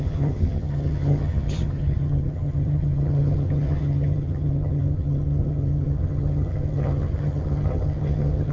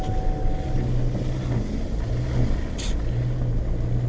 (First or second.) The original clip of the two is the second